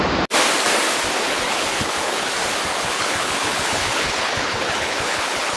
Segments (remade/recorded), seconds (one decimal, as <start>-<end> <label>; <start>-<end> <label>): 0.0-1.2 recorded; 1.2-2.3 remade; 2.3-2.7 recorded; 2.7-5.6 remade